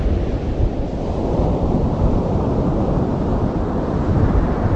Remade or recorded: remade